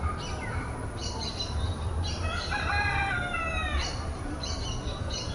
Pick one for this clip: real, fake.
fake